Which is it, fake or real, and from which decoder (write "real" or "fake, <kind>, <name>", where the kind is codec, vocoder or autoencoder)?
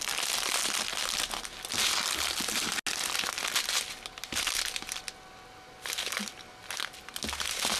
real